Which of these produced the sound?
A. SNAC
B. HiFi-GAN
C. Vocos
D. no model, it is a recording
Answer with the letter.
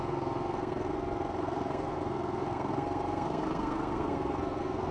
A